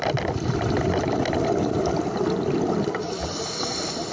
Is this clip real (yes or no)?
yes